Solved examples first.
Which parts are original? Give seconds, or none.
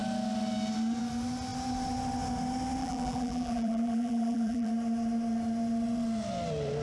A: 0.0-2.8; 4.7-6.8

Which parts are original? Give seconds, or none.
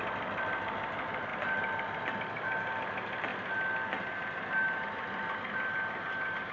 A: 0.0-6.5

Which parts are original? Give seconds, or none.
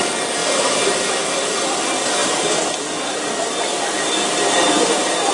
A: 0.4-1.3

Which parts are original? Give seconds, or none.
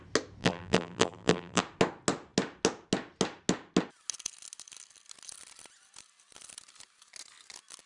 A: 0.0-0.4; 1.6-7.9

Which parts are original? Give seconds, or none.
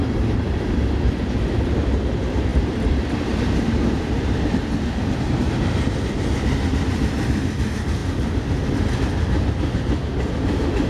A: 1.2-2.5; 4.7-10.9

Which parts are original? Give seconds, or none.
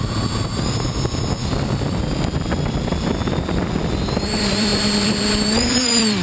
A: none